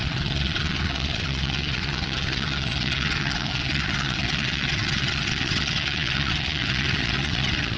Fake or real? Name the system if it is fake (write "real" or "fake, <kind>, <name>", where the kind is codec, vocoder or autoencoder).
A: fake, vocoder, WaveNeXt